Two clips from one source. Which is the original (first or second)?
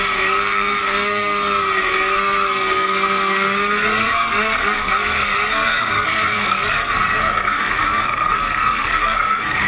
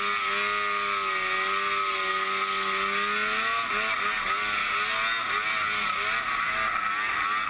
second